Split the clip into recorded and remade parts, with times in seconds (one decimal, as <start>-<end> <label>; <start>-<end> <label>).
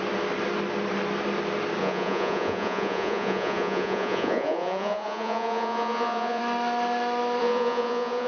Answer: 0.0-1.8 recorded; 1.8-6.4 remade; 6.4-7.4 recorded; 7.4-8.3 remade